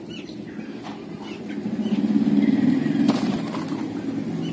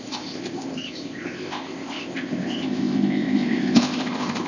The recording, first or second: first